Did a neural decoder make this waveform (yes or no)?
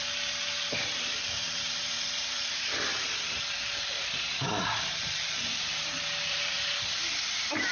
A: yes